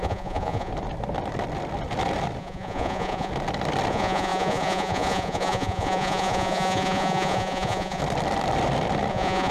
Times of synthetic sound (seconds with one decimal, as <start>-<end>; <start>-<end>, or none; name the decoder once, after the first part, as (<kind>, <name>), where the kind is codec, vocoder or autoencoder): 0.0-0.7 (vocoder, Vocos); 2.4-3.3; 3.9-8.0; 9.1-9.5